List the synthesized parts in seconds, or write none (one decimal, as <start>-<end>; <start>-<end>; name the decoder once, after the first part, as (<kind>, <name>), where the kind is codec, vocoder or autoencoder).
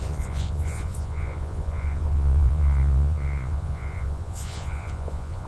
0.0-5.5 (vocoder, Vocos)